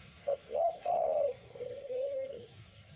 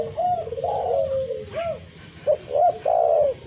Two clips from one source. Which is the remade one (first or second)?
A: first